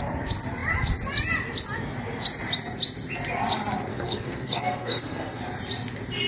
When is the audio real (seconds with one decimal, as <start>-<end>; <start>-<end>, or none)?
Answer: 0.0-3.9; 5.4-6.3